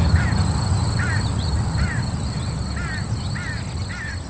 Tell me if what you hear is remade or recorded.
recorded